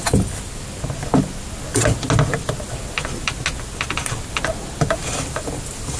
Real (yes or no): yes